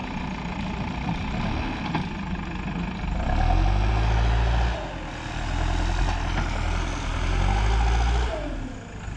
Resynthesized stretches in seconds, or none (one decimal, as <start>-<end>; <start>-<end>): none